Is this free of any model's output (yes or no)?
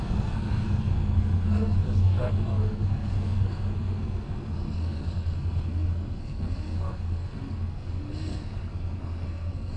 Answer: no